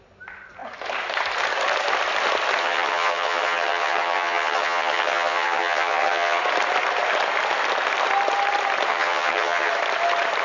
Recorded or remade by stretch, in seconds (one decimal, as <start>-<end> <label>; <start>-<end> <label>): 0.0-2.6 recorded; 2.6-6.4 remade; 6.4-8.9 recorded; 8.9-9.7 remade; 9.7-10.4 recorded